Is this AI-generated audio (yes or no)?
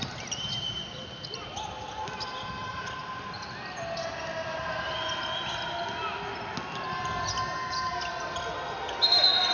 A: no